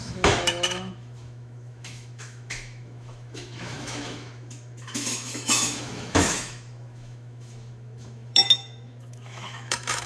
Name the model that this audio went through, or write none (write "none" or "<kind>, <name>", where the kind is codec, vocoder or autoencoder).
autoencoder, DAC-VAE